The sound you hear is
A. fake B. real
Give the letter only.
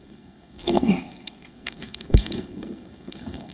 A